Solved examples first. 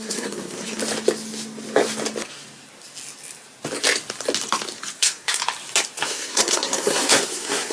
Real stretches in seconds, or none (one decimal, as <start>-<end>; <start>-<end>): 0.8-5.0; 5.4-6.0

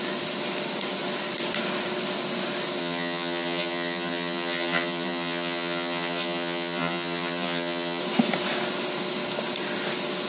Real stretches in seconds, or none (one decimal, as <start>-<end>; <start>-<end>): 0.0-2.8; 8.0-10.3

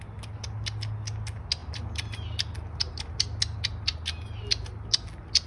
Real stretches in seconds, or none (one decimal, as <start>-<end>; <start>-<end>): 0.0-5.5

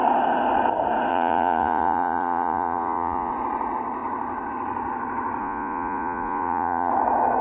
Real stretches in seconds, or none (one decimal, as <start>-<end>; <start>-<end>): 0.0-1.1; 3.3-5.4; 6.9-7.4

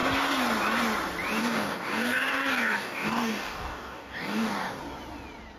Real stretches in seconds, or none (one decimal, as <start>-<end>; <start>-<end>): 0.0-1.4; 4.8-5.6